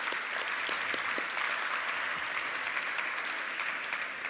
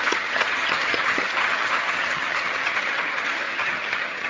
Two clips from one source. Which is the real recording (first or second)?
first